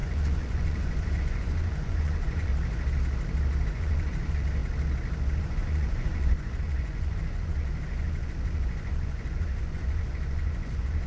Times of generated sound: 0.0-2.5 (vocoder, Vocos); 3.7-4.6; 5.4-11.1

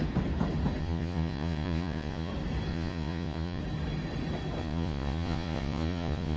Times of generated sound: 0.8-2.3 (vocoder, Vocos); 2.7-3.6; 4.6-6.4